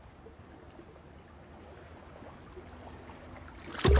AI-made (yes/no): no